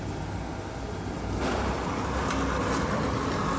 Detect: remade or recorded recorded